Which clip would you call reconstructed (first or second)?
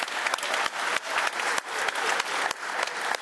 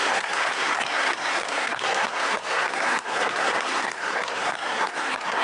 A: second